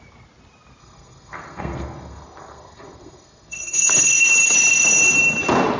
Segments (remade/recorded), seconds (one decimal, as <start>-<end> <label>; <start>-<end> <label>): 0.0-0.8 recorded; 0.8-4.3 remade; 4.3-5.8 recorded